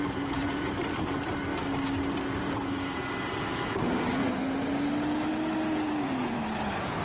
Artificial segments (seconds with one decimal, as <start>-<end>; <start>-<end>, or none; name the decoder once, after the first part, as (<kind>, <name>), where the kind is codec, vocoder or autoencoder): 0.0-1.5 (vocoder, BigVGAN v2); 2.2-4.2; 6.3-7.0